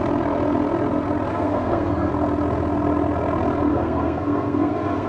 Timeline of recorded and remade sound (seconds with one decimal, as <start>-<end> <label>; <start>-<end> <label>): 0.0-1.3 recorded; 1.3-2.1 remade; 2.1-3.7 recorded; 3.7-5.1 remade